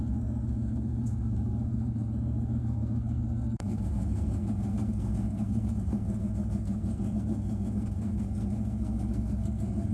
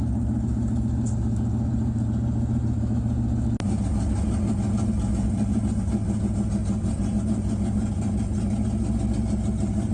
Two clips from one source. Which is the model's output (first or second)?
first